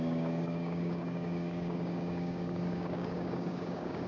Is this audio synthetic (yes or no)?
yes